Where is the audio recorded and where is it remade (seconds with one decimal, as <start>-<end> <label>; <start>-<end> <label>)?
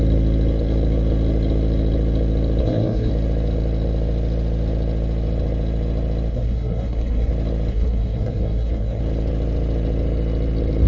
0.0-2.6 recorded; 2.6-3.1 remade; 3.1-6.3 recorded; 6.3-7.3 remade; 7.3-7.7 recorded; 7.7-9.0 remade; 9.0-10.9 recorded